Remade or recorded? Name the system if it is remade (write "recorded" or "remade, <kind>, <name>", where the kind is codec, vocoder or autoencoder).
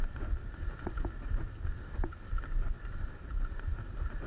recorded